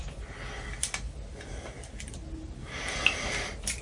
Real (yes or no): yes